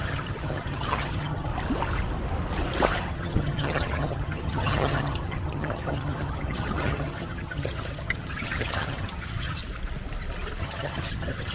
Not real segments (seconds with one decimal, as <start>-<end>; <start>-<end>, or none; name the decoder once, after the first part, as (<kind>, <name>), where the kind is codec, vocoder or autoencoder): 0.0-1.5 (vocoder, HiFi-GAN); 3.0-9.6; 10.6-11.5